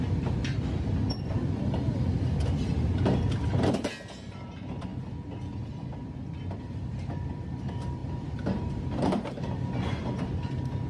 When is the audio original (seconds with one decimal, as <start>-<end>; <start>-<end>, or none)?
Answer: 4.9-5.5